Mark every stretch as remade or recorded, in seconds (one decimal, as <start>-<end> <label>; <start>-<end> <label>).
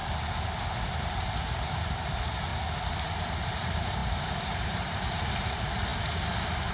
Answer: 0.0-1.0 recorded; 1.0-2.5 remade; 2.5-3.4 recorded; 3.4-6.7 remade